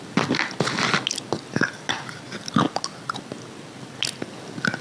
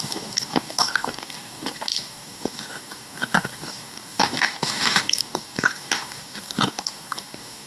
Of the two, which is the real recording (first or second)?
first